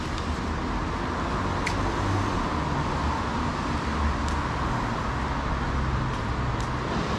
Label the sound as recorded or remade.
recorded